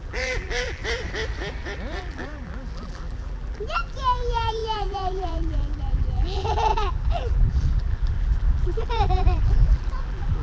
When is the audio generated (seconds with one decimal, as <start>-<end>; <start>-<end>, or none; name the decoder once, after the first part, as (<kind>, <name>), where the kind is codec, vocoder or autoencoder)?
0.0-0.8 (vocoder, BigVGAN v2); 2.0-10.4